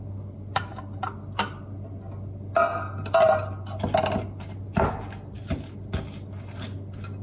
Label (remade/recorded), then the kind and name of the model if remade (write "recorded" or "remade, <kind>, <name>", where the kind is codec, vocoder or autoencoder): recorded